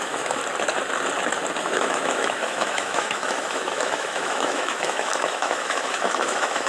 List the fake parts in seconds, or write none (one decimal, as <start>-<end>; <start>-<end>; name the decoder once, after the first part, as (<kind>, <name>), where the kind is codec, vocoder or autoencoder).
0.0-0.4 (autoencoder, DAC-VAE); 1.6-6.7